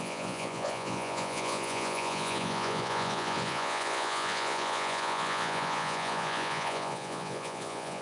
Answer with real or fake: fake